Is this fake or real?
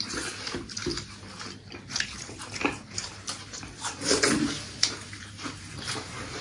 fake